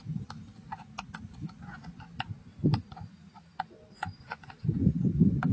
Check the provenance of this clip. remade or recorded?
recorded